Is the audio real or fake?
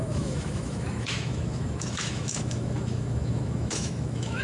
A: fake